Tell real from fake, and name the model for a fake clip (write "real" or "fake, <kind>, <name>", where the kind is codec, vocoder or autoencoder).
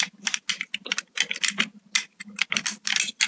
real